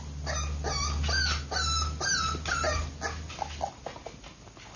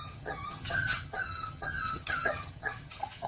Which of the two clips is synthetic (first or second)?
second